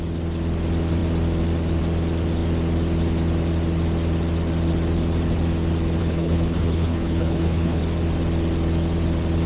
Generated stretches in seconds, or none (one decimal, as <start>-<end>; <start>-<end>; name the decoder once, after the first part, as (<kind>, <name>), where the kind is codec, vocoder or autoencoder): 6.0-7.8 (codec, HILCodec)

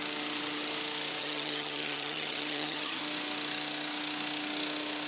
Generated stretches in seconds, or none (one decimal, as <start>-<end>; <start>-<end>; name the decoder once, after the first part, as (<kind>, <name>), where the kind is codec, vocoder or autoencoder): 1.2-3.0 (vocoder, HiFi-GAN)

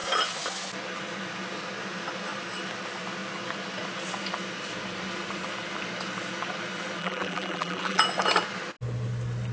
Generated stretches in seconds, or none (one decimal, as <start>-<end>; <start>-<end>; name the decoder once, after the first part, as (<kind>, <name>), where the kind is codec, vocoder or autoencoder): 7.0-8.0 (vocoder, BigVGAN v2)

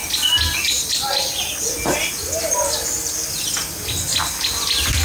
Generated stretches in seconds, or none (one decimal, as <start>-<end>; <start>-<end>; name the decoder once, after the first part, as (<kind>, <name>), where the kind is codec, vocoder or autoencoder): none

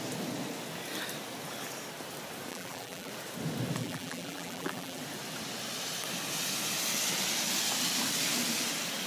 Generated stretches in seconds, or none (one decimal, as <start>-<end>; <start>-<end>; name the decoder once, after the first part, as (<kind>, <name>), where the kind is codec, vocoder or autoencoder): 2.5-3.1 (vocoder, BigVGAN v2); 3.8-5.0

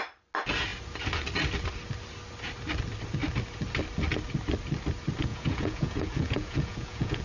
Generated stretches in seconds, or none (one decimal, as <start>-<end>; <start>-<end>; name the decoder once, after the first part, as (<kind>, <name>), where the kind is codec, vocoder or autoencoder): 5.3-7.2 (vocoder, Vocos)

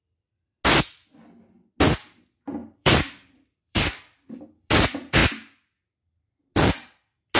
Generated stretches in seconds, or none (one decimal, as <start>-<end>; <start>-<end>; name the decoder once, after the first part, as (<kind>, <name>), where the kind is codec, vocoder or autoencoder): 2.6-4.7 (vocoder, BigVGAN v2)

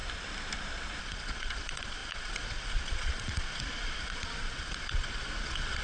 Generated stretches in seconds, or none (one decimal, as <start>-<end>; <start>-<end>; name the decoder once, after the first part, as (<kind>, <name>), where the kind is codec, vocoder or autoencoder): 1.0-5.8 (vocoder, Vocos)